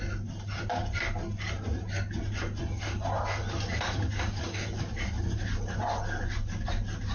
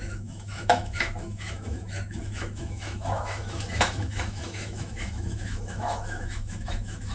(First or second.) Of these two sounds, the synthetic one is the second